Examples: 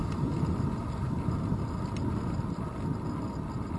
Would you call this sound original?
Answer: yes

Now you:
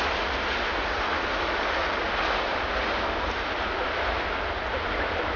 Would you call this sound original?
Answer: yes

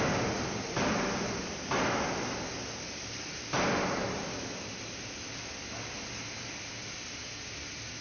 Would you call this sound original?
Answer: yes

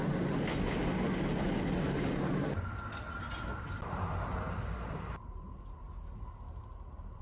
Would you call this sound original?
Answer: yes